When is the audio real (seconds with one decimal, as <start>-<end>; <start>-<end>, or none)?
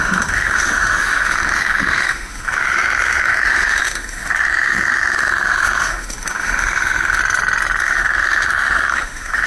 7.2-7.8